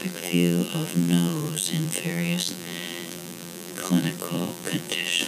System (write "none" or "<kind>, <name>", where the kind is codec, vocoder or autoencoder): vocoder, BigVGAN v2